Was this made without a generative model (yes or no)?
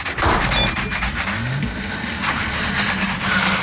yes